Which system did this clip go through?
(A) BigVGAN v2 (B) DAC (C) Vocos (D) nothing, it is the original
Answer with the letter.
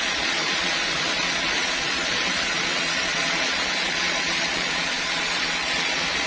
C